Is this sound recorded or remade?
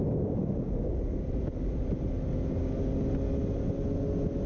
recorded